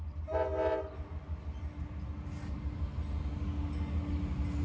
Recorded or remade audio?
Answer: recorded